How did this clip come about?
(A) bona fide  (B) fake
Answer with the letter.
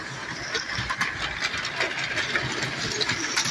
A